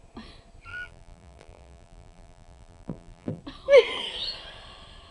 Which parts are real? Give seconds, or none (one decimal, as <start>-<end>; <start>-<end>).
0.0-0.7; 3.4-5.1